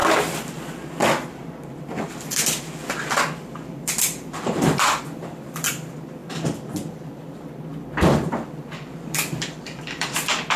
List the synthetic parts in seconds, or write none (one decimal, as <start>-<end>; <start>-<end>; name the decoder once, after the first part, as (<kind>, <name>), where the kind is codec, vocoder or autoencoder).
1.3-10.6 (vocoder, BigVGAN v2)